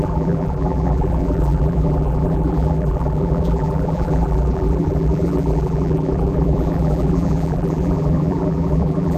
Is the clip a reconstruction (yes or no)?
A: yes